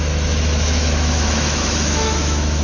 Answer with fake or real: fake